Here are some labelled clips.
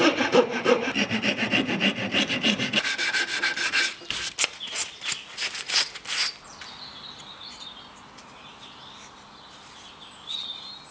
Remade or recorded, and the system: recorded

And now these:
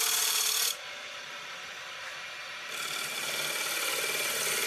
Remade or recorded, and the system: recorded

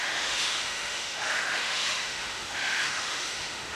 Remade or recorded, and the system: remade, autoencoder, DAC-VAE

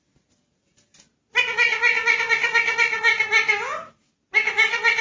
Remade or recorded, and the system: recorded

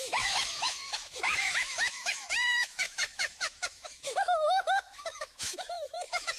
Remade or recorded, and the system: remade, autoencoder, DAC-VAE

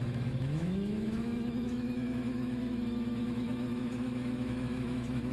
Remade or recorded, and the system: remade, autoencoder, DAC-VAE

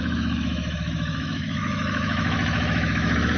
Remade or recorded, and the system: remade, autoencoder, DAC-VAE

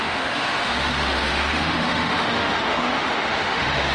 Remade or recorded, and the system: remade, autoencoder, DAC-VAE